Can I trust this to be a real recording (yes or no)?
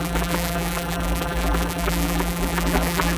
no